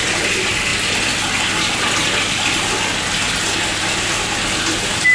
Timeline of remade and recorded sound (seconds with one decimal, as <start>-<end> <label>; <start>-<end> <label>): 0.0-5.1 recorded